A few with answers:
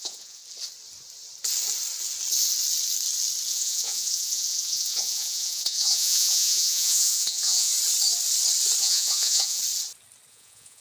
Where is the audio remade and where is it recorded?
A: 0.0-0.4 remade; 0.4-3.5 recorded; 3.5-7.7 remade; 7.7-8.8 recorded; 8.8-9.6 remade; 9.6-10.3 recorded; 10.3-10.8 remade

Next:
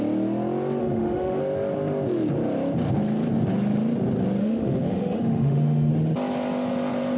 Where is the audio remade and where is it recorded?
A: 0.0-0.8 recorded; 0.8-1.4 remade; 1.4-4.4 recorded; 4.4-5.9 remade; 5.9-7.2 recorded

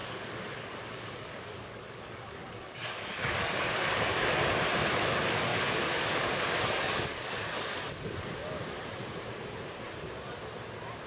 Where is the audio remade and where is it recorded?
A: 0.0-4.3 remade; 4.3-5.5 recorded; 5.5-7.9 remade; 7.9-11.1 recorded

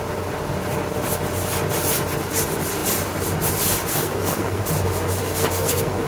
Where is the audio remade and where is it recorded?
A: 0.0-3.9 recorded; 3.9-4.6 remade; 4.6-5.2 recorded; 5.2-6.1 remade

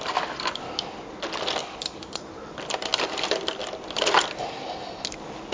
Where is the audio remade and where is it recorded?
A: 0.0-1.6 recorded; 1.6-2.1 remade; 2.1-5.5 recorded

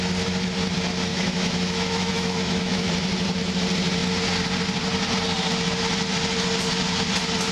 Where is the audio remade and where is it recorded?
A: 0.0-1.1 recorded; 1.1-2.9 remade; 2.9-7.5 recorded

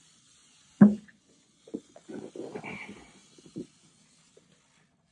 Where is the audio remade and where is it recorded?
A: 0.0-0.4 recorded; 0.4-2.3 remade; 2.3-5.1 recorded

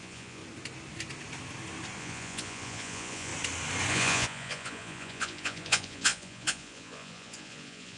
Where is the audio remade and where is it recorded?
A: 0.0-0.4 remade; 0.4-2.0 recorded; 2.0-3.3 remade; 3.3-3.9 recorded; 3.9-8.0 remade